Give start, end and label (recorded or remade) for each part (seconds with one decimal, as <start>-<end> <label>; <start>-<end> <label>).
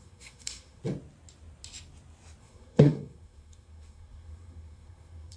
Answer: 0.0-0.8 remade; 0.8-2.4 recorded; 2.4-5.4 remade